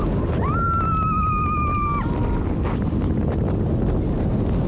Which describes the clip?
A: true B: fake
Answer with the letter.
A